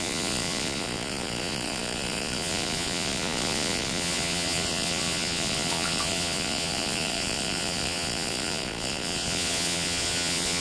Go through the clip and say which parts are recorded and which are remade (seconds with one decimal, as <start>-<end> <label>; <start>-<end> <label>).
0.0-10.6 remade